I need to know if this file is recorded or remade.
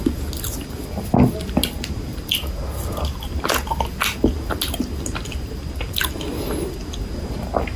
recorded